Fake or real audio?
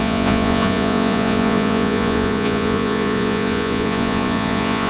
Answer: fake